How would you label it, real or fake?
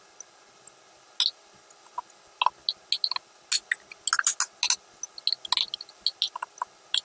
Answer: real